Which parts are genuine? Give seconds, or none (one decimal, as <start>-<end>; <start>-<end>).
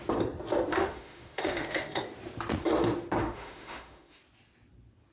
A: 0.0-0.7; 2.0-3.2; 4.2-5.1